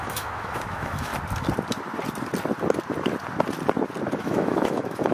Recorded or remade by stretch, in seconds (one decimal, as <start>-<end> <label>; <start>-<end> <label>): 0.0-1.1 remade; 1.1-4.2 recorded; 4.2-5.1 remade

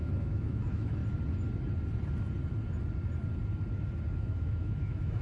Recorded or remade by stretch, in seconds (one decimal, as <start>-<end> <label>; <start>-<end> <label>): 0.0-1.0 remade; 1.0-4.1 recorded; 4.1-5.2 remade

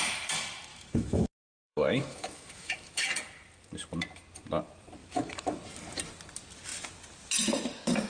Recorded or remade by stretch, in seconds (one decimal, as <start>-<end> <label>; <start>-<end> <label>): 0.0-0.7 recorded; 0.7-3.1 remade; 3.1-5.0 recorded; 5.0-5.6 remade; 5.6-8.1 recorded

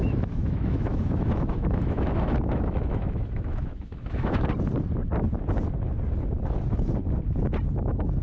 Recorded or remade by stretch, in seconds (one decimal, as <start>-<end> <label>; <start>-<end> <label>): 0.0-4.5 remade; 4.5-8.2 recorded

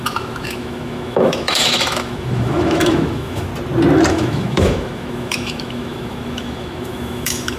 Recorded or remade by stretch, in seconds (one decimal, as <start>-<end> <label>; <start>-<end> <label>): 0.0-3.5 remade; 3.5-4.1 recorded; 4.1-7.6 remade